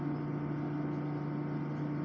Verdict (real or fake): real